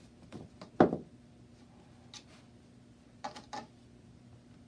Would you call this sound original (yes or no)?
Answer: yes